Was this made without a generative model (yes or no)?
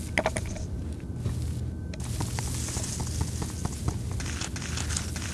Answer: yes